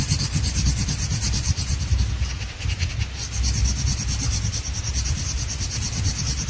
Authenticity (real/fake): real